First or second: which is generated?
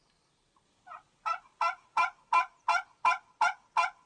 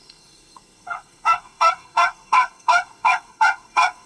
second